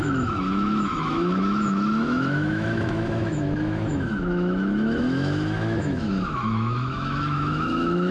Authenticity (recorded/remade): remade